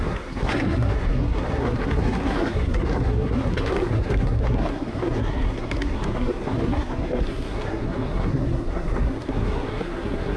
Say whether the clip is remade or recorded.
remade